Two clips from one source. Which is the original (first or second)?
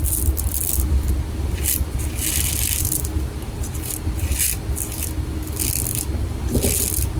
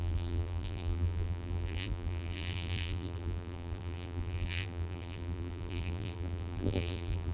first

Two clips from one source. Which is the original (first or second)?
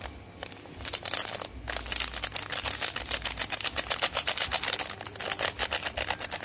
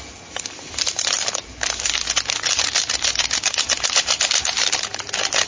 first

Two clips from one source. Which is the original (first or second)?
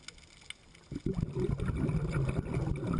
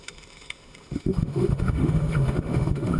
first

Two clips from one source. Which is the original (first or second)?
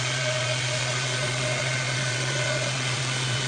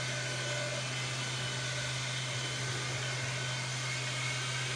second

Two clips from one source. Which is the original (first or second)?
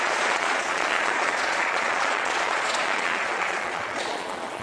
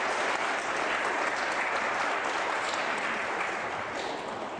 second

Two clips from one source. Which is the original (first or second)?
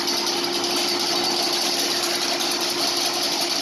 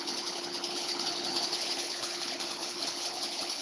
first